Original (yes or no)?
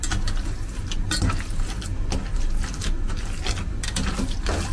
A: yes